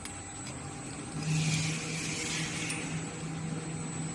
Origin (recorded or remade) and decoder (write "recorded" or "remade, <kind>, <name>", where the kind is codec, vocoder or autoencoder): recorded